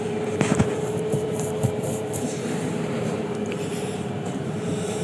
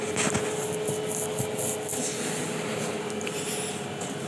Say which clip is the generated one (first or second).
first